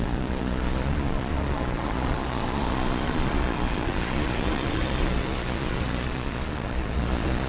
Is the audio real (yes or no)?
no